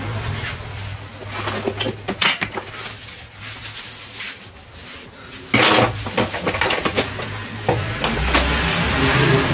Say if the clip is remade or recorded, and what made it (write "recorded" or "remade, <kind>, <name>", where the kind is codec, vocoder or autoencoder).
recorded